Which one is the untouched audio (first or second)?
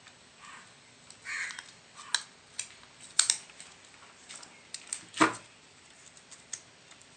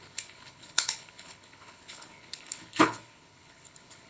first